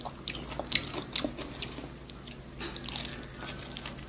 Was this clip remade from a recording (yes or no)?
no